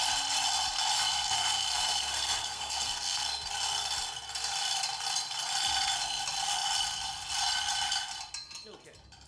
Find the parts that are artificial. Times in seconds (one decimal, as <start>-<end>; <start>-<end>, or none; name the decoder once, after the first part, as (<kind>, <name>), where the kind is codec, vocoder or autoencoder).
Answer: 1.1-3.5 (codec, SNAC)